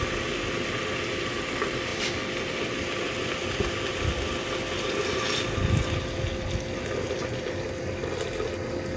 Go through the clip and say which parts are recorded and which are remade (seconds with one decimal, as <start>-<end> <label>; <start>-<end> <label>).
0.0-9.0 recorded